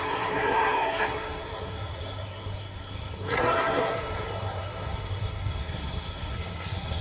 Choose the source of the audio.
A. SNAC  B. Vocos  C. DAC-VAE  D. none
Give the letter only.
A